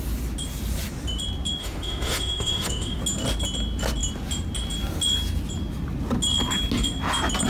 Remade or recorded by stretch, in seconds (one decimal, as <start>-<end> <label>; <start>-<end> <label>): 0.0-1.6 recorded; 1.6-3.0 remade; 3.0-7.5 recorded